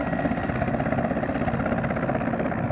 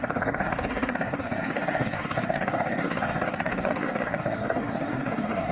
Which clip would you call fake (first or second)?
second